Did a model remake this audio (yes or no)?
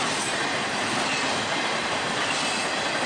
no